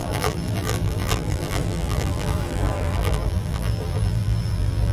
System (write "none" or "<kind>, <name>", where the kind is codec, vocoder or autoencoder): vocoder, BigVGAN v2